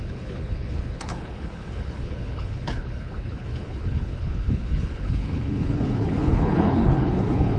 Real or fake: fake